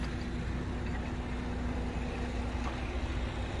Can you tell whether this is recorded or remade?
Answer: recorded